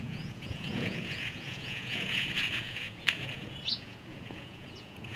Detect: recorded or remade remade